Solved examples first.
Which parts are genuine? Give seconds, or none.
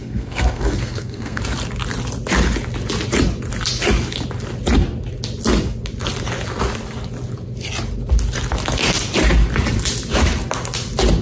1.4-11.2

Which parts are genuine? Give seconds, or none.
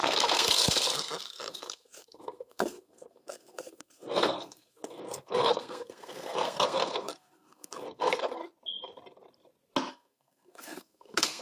8.4-9.9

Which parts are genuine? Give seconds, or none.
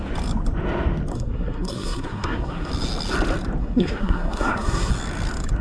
0.0-1.1; 2.7-3.6; 4.9-5.6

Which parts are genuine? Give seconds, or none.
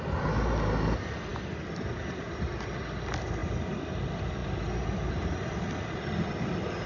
0.0-6.9